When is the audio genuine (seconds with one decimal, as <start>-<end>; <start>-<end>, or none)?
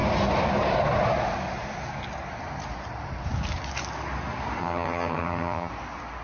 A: 0.0-4.6; 5.7-6.2